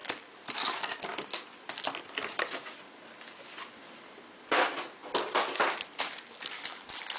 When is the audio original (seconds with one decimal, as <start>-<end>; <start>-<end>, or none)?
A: 0.0-7.2